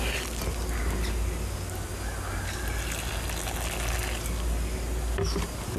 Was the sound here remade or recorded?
recorded